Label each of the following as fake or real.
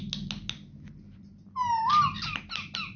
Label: real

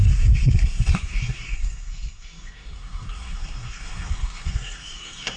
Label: fake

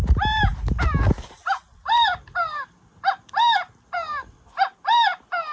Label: real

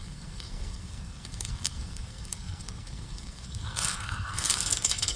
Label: fake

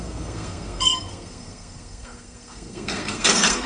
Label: fake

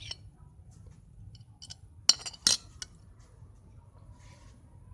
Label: real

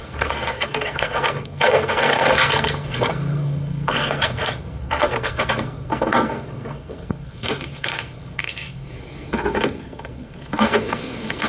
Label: fake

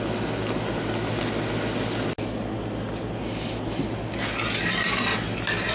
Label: real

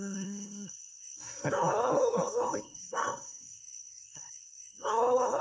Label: fake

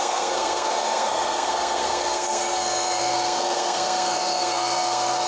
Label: fake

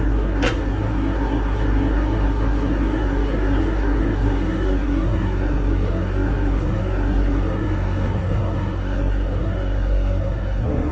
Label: fake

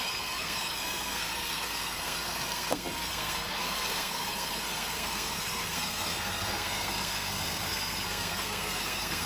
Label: fake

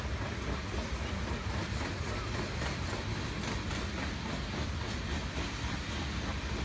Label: real